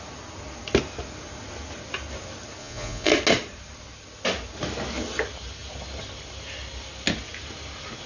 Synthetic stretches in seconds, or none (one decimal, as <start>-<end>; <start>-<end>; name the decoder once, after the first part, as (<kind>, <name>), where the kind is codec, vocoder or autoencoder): 2.6-3.1 (vocoder, Vocos)